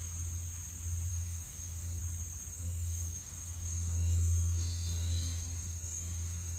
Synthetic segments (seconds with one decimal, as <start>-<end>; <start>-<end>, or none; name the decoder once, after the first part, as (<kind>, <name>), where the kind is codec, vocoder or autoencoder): 1.1-2.0 (codec, DAC); 2.5-6.6